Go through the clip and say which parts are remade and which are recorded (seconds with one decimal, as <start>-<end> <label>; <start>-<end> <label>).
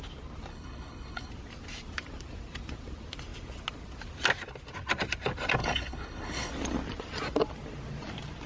0.0-0.5 recorded; 0.5-1.3 remade; 1.3-5.6 recorded; 5.6-6.5 remade; 6.5-8.5 recorded